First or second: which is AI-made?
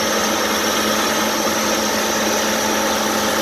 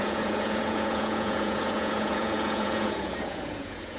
second